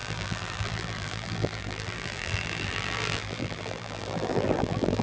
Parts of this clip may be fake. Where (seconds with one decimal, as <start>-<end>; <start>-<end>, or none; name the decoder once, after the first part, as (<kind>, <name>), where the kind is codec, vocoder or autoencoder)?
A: 0.0-5.0 (vocoder, BigVGAN v2)